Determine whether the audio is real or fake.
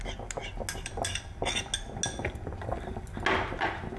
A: real